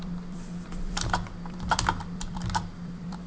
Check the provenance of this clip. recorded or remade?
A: remade